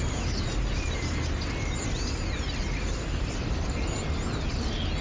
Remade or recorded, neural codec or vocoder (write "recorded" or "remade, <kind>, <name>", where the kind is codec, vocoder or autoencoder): recorded